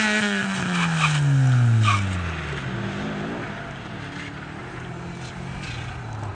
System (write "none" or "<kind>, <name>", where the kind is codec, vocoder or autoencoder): none